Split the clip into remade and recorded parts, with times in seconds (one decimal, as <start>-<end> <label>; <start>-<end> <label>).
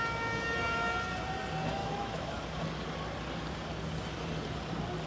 0.0-1.8 recorded; 1.8-2.4 remade; 2.4-5.1 recorded